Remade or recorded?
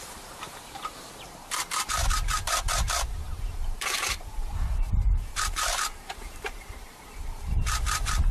remade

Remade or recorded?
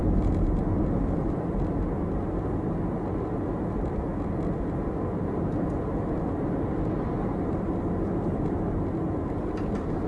recorded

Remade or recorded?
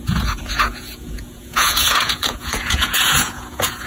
remade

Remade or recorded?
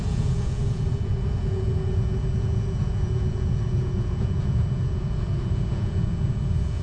remade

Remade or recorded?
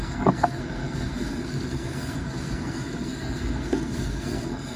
remade